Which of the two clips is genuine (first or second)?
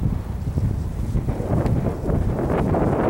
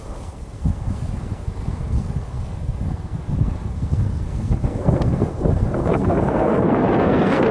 first